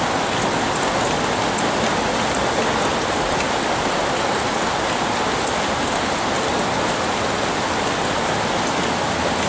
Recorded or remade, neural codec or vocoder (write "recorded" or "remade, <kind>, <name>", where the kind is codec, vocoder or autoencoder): recorded